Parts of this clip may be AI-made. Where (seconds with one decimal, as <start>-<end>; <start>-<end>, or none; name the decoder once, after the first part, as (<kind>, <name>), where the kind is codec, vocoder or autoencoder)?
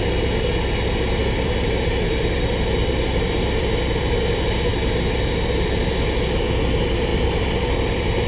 1.2-4.1 (vocoder, BigVGAN v2); 7.1-8.3